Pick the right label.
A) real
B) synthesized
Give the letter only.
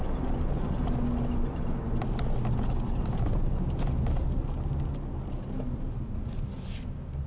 A